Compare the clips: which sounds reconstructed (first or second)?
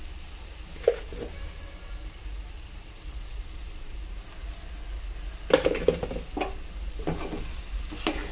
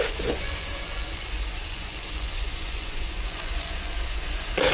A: second